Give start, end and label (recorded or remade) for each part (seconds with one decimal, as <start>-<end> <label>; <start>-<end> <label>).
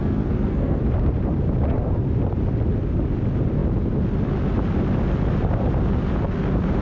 0.0-0.8 remade; 0.8-6.8 recorded